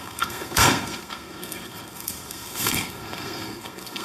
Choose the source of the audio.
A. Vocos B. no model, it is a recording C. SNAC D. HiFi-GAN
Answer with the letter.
C